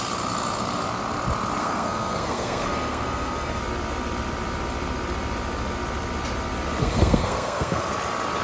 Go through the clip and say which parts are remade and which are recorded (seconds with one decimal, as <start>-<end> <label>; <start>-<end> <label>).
0.0-1.6 recorded; 1.6-3.6 remade; 3.6-6.8 recorded; 6.8-7.9 remade; 7.9-8.4 recorded